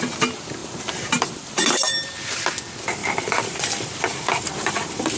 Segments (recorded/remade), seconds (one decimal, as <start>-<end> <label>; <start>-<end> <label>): 0.0-0.6 recorded; 0.6-2.1 remade; 2.1-3.0 recorded; 3.0-5.2 remade